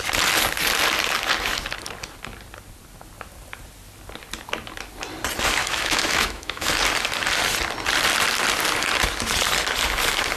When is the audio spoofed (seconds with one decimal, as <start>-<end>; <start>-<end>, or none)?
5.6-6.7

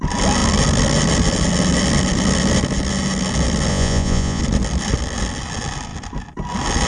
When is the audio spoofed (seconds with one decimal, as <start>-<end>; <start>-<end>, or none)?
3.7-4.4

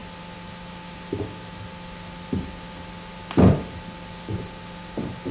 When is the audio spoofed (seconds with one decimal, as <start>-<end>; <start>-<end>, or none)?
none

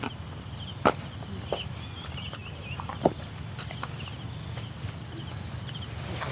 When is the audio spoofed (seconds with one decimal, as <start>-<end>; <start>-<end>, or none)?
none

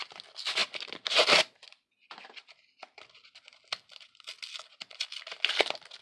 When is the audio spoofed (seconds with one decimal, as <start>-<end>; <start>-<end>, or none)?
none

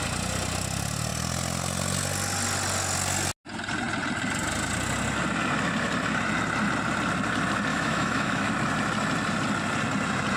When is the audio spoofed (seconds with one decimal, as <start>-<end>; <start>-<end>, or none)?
7.7-8.5

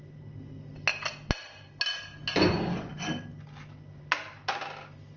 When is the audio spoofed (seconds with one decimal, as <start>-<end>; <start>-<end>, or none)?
none

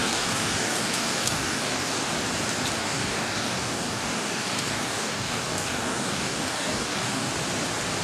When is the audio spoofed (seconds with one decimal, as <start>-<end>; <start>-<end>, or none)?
0.0-2.1; 2.8-7.3